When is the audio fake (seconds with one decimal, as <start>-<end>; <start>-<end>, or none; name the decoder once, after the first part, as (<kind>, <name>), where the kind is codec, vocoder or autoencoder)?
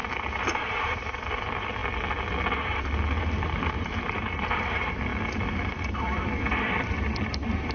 0.0-1.8 (vocoder, BigVGAN v2); 3.2-5.1; 6.6-7.7